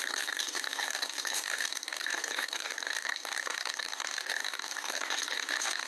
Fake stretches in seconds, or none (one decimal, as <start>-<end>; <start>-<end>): 0.0-5.9